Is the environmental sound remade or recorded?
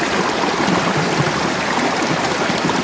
remade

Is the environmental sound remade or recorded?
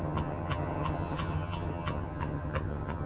remade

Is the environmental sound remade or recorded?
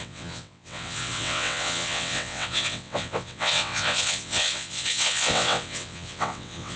remade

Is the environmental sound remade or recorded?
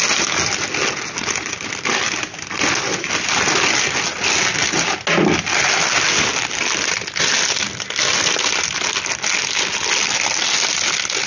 recorded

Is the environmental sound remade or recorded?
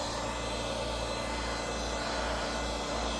recorded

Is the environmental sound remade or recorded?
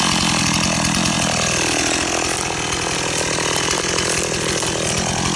recorded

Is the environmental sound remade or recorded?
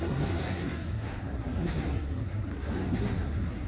remade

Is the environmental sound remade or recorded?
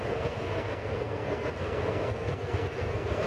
remade